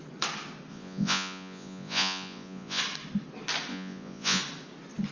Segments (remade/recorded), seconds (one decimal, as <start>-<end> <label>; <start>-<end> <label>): 0.0-0.7 recorded; 0.7-2.8 remade; 2.8-3.7 recorded; 3.7-4.4 remade; 4.4-5.1 recorded